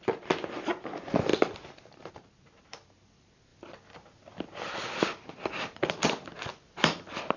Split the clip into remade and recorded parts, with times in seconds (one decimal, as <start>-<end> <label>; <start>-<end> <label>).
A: 0.0-3.5 remade; 3.5-5.0 recorded; 5.0-7.4 remade